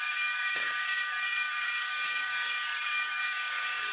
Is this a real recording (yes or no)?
no